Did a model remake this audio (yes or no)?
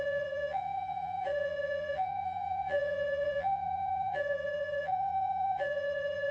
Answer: yes